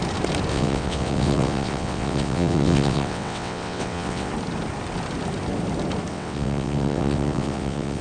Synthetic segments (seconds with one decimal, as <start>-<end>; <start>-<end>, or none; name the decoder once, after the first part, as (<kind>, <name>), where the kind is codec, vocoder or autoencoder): 0.5-4.3 (vocoder, WaveNeXt); 6.1-8.0